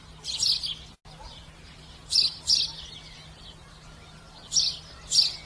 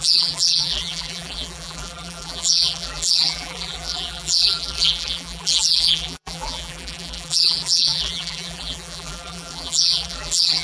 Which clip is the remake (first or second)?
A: second